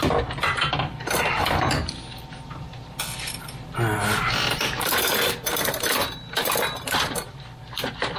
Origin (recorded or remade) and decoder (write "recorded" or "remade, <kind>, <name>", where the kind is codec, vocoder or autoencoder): recorded